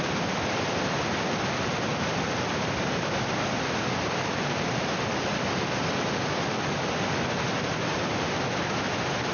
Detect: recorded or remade recorded